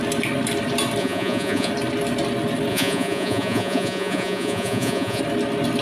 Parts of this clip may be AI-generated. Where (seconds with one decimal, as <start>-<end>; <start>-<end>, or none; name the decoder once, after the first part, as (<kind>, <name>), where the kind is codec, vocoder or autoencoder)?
1.0-1.7 (vocoder, Vocos); 2.7-5.2

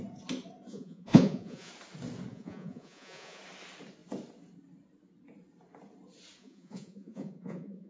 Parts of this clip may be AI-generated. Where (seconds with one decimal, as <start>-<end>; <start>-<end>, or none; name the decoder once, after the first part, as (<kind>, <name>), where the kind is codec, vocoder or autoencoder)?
0.7-1.7 (vocoder, Vocos); 2.3-3.4; 6.4-7.9

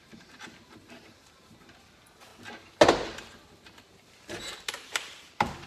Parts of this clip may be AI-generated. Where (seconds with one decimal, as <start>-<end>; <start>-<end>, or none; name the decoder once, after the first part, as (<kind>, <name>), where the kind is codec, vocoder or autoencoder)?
0.0-2.3 (vocoder, BigVGAN v2); 3.8-5.7